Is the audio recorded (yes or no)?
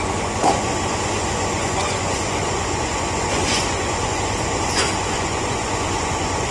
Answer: no